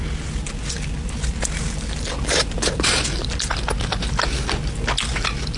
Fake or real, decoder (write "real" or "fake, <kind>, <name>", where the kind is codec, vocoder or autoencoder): real